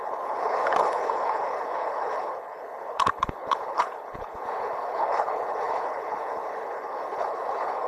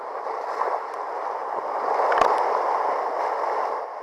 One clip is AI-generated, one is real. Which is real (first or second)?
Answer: second